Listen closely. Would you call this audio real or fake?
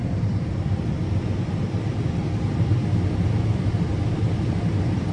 fake